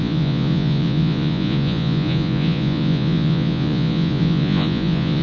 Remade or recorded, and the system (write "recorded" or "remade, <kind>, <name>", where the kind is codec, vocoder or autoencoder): remade, vocoder, Vocos